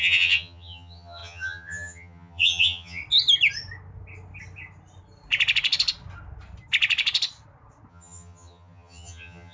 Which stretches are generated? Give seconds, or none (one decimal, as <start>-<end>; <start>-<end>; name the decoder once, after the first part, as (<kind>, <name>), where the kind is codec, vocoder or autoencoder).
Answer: 0.0-3.0 (vocoder, HiFi-GAN); 7.9-9.5